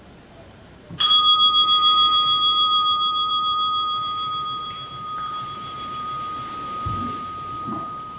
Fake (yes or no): yes